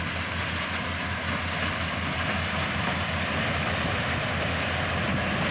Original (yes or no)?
yes